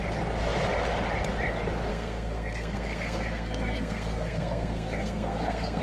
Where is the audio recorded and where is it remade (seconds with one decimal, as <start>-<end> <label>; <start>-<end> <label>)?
0.0-1.9 recorded; 1.9-5.8 remade